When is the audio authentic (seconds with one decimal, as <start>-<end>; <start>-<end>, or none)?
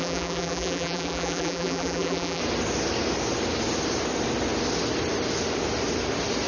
2.4-6.5